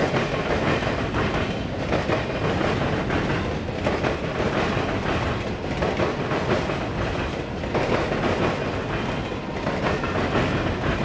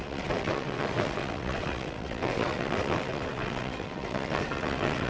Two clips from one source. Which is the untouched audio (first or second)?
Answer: first